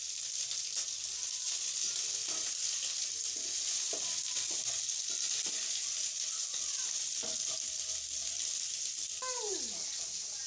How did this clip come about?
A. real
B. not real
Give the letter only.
A